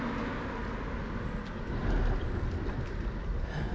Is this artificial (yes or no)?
no